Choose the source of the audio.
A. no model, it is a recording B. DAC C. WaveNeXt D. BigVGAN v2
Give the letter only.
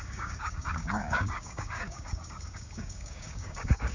B